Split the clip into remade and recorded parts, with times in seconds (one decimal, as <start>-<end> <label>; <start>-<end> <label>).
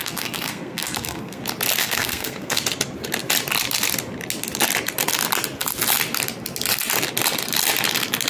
0.0-1.4 remade; 1.4-1.8 recorded; 1.8-2.6 remade; 2.6-8.3 recorded